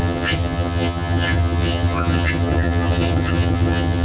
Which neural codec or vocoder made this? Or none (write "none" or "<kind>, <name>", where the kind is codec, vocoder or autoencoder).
vocoder, HiFi-GAN